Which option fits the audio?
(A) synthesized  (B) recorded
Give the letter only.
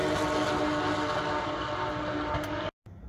B